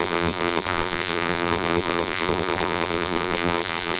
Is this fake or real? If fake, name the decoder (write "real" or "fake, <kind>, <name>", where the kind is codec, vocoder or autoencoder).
fake, vocoder, BigVGAN v2